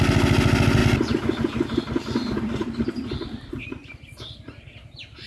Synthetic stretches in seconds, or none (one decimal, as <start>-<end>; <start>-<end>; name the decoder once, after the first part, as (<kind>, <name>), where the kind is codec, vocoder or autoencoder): none